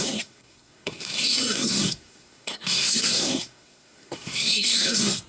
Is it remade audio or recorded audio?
remade